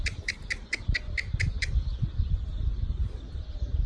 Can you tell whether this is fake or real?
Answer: fake